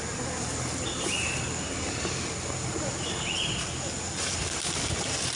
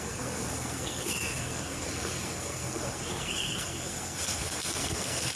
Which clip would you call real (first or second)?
first